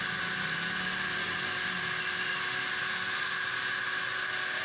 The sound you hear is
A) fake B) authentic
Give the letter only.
B